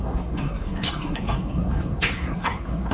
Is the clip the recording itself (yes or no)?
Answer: no